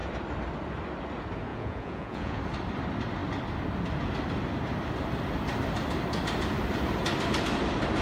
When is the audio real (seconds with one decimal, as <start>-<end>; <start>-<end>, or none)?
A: 0.0-1.5; 2.4-8.0